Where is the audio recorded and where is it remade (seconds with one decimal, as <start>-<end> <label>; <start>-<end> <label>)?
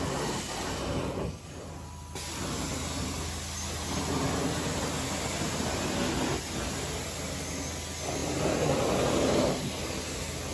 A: 0.0-10.5 recorded